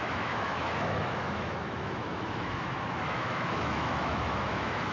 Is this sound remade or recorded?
remade